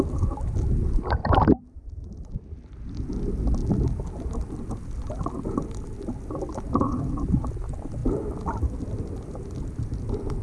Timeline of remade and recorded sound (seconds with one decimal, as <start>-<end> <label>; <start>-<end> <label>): 0.0-10.4 recorded